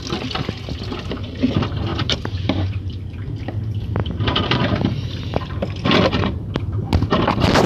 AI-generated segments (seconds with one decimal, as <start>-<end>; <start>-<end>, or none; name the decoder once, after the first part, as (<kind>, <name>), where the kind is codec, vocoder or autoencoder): 1.9-3.4 (vocoder, BigVGAN v2); 4.0-5.5